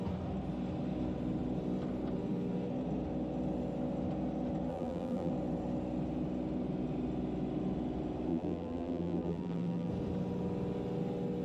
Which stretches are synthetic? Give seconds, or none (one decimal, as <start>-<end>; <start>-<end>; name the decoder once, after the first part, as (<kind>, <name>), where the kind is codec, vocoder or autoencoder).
4.7-5.3 (vocoder, BigVGAN v2); 8.3-9.9